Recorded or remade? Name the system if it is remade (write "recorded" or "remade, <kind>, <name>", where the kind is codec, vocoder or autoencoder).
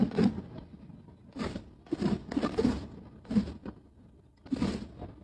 recorded